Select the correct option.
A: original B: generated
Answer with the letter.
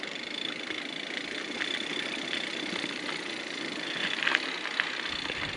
A